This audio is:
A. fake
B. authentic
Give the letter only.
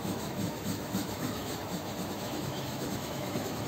A